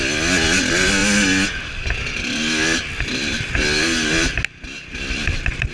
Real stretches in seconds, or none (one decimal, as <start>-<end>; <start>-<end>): 0.0-5.7